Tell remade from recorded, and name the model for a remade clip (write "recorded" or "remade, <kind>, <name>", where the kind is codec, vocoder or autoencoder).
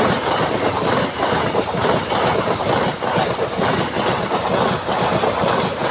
recorded